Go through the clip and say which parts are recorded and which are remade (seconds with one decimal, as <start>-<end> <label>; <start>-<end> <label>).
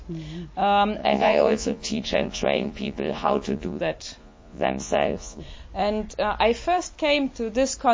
0.0-1.0 recorded; 1.0-3.8 remade; 3.8-4.2 recorded; 4.2-5.4 remade; 5.4-7.9 recorded